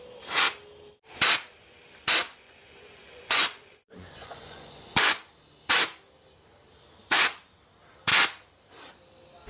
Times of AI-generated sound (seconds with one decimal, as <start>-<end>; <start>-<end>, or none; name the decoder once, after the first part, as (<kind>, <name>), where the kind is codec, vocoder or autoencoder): 2.2-5.2 (vocoder, Vocos)